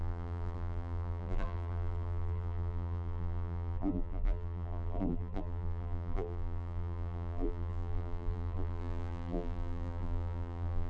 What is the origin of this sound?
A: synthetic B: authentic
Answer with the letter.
A